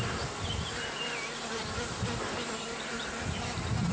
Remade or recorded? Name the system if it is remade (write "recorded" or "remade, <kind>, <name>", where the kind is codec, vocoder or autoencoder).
recorded